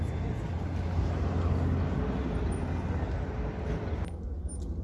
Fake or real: real